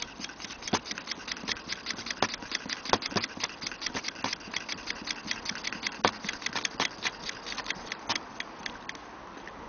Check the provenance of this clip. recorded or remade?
recorded